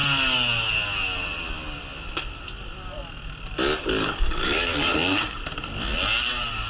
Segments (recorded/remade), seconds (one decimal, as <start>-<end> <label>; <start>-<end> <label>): 0.0-4.0 recorded; 4.0-5.4 remade; 5.4-6.2 recorded; 6.2-6.7 remade